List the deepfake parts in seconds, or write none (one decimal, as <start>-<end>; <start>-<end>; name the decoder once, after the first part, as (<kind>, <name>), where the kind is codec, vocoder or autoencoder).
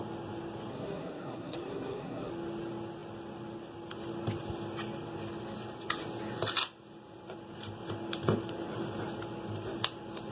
0.7-2.3 (codec, SNAC)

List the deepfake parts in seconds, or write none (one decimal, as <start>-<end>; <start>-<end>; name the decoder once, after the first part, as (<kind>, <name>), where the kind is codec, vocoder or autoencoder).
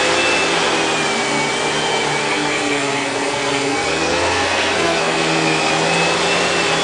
2.2-5.7 (codec, SNAC)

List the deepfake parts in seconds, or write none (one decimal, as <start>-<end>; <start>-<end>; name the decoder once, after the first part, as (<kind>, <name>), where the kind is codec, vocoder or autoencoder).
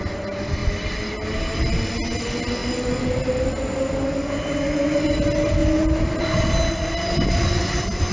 none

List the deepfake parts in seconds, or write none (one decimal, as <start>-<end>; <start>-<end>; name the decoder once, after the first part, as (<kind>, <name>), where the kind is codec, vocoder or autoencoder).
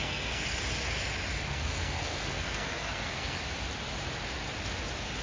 0.0-0.6 (codec, SNAC); 1.5-3.4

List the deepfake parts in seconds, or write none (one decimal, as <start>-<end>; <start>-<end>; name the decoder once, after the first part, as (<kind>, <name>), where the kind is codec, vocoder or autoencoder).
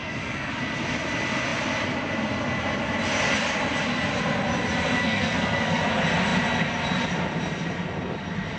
0.0-0.5 (codec, SNAC); 5.0-5.8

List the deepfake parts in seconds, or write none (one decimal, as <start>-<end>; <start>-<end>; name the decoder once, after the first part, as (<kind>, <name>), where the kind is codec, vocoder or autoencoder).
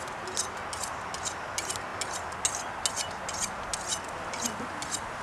none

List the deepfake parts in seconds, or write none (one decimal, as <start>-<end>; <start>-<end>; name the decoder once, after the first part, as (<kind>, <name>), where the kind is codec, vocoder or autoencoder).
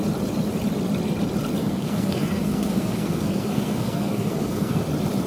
1.6-4.8 (codec, SNAC)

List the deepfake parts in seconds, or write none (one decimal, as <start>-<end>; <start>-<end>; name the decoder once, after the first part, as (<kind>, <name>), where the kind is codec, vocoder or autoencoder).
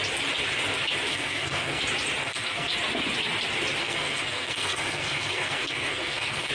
1.1-1.8 (codec, SNAC); 2.2-2.7; 3.8-6.5